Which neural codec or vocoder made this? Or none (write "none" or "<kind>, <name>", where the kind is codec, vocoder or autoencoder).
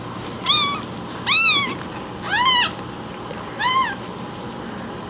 none